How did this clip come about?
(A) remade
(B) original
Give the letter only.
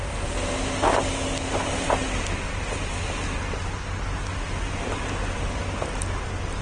B